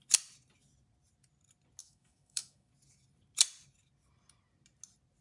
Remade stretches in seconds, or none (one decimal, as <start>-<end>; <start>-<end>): 1.8-2.7